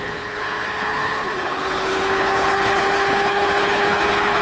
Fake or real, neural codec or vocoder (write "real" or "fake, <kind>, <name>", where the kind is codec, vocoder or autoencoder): fake, codec, HILCodec